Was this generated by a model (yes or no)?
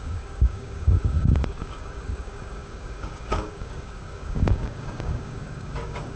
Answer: yes